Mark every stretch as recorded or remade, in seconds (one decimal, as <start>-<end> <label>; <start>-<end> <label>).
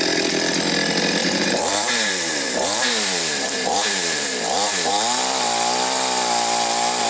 0.0-1.2 recorded; 1.2-4.9 remade; 4.9-7.1 recorded